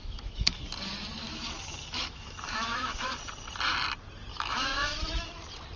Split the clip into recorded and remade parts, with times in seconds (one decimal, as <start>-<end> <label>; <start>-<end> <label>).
0.0-0.6 remade; 0.6-1.2 recorded; 1.2-3.2 remade; 3.2-4.3 recorded; 4.3-5.3 remade; 5.3-5.8 recorded